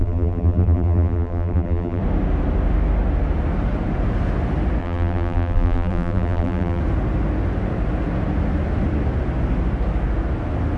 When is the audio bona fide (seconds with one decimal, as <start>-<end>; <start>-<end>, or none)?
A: 2.0-4.8; 6.8-10.8